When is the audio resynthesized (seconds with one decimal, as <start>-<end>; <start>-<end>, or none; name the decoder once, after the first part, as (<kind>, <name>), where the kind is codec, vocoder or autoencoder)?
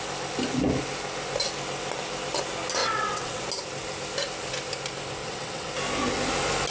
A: 2.8-3.4 (vocoder, WaveNeXt); 5.2-5.7